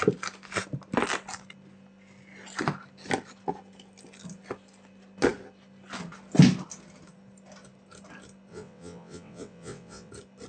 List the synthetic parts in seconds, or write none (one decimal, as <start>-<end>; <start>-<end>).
8.5-10.1